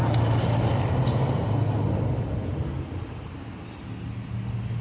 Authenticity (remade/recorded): recorded